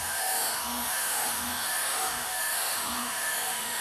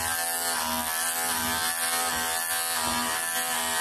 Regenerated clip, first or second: first